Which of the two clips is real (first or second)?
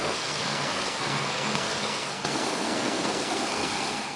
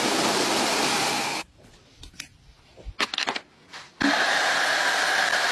second